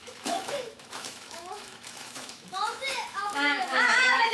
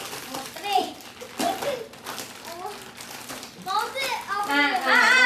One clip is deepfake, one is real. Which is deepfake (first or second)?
first